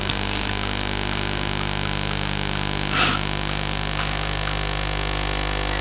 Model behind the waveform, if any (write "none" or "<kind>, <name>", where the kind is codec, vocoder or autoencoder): none